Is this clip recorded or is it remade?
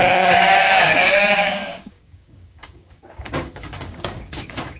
remade